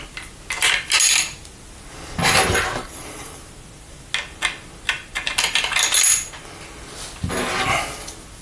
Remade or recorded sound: recorded